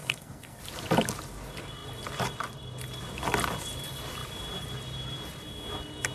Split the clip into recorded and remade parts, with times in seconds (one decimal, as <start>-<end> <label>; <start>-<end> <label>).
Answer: 0.0-0.6 remade; 0.6-6.1 recorded